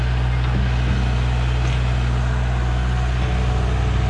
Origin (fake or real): real